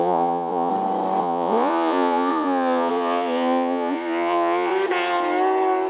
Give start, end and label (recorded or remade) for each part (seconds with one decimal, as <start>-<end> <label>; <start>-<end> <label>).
0.0-0.7 remade; 0.7-1.2 recorded; 1.2-4.7 remade; 4.7-5.9 recorded